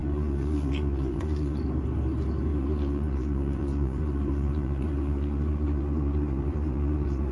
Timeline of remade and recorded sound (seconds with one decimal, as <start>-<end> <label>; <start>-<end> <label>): 0.0-1.6 remade; 1.6-2.5 recorded; 2.5-7.3 remade